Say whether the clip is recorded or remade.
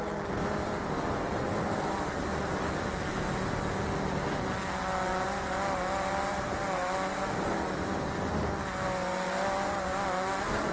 recorded